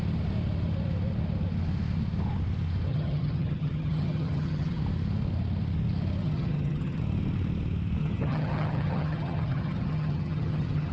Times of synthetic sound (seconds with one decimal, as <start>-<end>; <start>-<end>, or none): 2.9-4.8; 6.2-7.0; 8.0-10.9